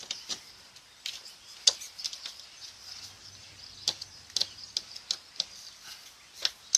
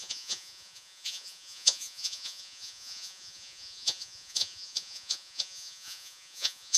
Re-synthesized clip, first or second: second